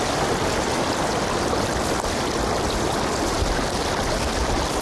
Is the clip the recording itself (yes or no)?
yes